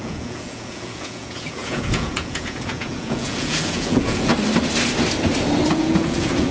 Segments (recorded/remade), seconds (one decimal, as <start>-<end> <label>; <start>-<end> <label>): 0.0-4.3 remade; 4.3-5.7 recorded; 5.7-6.5 remade